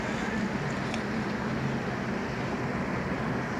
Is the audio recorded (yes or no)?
yes